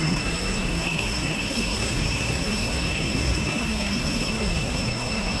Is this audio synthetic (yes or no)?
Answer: yes